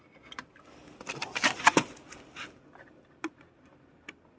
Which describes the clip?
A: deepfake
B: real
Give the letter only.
B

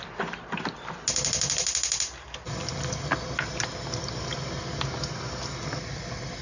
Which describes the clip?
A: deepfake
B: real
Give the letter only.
B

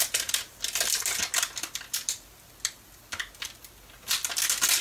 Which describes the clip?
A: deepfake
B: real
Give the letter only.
B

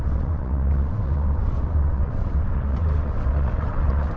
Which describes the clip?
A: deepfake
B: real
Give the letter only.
A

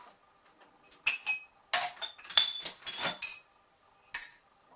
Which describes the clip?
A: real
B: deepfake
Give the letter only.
A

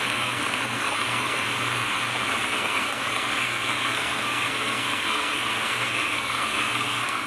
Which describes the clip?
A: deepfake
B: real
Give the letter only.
A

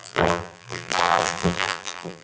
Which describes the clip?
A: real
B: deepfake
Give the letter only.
B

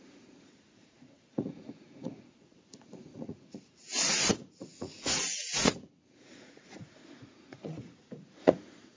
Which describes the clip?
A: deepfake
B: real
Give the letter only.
A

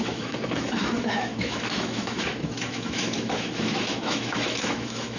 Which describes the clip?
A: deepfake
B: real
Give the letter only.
A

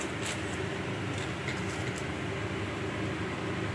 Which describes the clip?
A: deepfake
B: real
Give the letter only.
B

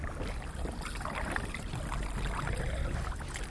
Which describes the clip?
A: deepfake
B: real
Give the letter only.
B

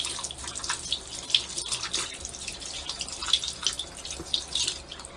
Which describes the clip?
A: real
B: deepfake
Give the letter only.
A